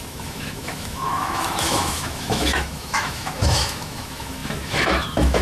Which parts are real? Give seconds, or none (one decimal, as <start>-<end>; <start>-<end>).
none